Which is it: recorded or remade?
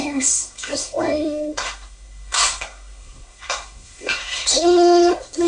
remade